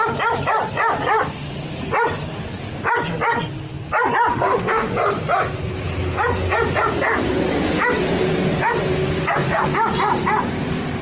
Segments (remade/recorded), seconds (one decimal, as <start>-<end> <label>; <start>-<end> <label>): 0.0-4.3 recorded; 4.3-4.9 remade; 4.9-11.0 recorded